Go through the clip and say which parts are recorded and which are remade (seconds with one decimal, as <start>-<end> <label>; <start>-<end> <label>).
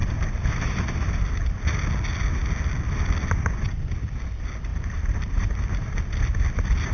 0.0-1.2 remade; 1.2-4.7 recorded; 4.7-6.0 remade; 6.0-6.9 recorded